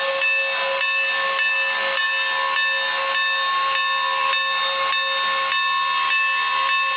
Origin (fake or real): real